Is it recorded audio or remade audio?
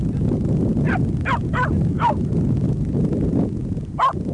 recorded